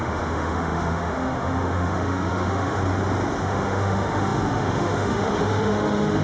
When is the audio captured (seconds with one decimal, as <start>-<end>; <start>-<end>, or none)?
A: 2.8-3.4